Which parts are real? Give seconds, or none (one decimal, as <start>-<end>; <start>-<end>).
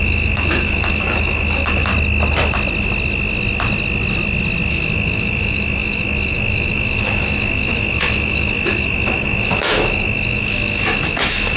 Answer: 1.9-4.7